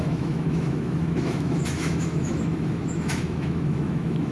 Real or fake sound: fake